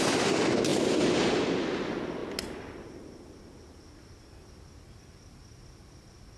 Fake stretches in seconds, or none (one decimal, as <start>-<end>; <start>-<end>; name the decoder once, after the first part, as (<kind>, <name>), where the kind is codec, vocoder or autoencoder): none

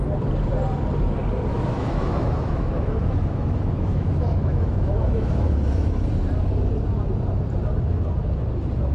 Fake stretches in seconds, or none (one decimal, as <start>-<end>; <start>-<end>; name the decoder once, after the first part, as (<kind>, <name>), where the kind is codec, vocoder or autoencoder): 1.5-6.1 (autoencoder, DAC-VAE)

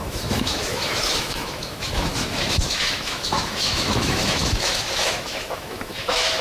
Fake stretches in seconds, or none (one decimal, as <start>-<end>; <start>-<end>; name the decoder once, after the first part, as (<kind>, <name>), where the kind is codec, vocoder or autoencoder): 0.0-6.4 (autoencoder, DAC-VAE)

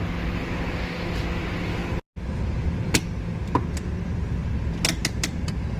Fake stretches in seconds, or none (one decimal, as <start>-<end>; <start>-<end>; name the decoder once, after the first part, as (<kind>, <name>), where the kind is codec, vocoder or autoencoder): none

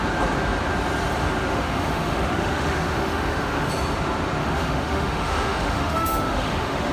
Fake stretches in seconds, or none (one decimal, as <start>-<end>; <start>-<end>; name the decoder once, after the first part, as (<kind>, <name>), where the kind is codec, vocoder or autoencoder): 1.5-3.7 (autoencoder, DAC-VAE); 4.4-6.9